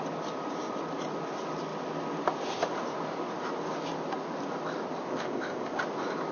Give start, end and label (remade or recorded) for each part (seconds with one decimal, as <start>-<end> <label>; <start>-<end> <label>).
0.0-5.1 recorded; 5.1-5.8 remade; 5.8-6.3 recorded